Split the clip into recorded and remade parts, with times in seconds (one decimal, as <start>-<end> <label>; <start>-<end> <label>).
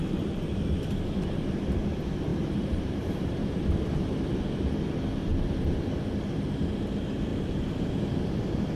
0.0-2.3 recorded; 2.3-3.5 remade; 3.5-7.3 recorded; 7.3-8.4 remade; 8.4-8.8 recorded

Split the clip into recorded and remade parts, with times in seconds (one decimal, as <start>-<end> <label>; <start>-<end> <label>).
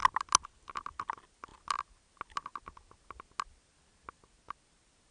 0.0-5.1 recorded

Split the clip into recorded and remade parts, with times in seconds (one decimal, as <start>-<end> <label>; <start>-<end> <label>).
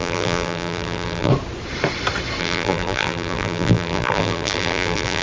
0.0-1.3 remade; 1.3-2.4 recorded; 2.4-5.2 remade